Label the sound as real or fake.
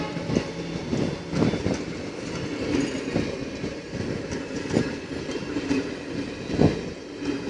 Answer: real